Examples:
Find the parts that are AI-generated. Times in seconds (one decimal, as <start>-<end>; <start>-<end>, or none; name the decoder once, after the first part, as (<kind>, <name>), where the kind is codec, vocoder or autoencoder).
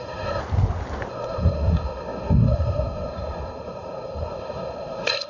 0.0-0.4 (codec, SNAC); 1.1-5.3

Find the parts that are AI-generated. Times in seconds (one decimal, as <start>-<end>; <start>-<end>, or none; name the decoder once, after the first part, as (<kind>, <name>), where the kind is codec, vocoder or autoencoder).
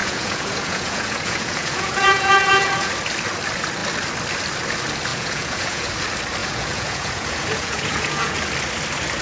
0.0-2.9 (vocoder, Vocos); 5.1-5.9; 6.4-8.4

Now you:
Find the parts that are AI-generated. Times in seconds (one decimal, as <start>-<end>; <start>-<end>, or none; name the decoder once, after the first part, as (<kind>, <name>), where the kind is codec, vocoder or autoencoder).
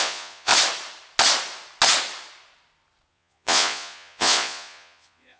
0.0-0.5 (vocoder, Vocos); 3.1-5.4